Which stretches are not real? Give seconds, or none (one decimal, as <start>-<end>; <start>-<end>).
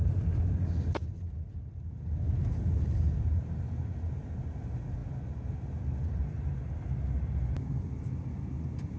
none